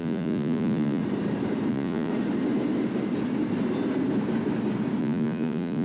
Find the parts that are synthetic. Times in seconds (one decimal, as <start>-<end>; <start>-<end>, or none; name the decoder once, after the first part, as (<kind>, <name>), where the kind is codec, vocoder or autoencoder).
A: 0.0-1.0 (vocoder, Vocos); 1.7-2.1; 5.0-5.8